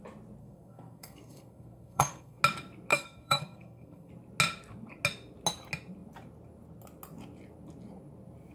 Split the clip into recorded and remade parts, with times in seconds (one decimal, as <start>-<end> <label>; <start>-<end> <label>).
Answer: 0.0-0.4 recorded; 0.4-2.4 remade; 2.4-2.9 recorded; 2.9-4.1 remade; 4.1-8.5 recorded